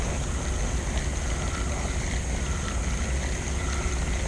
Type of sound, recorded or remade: recorded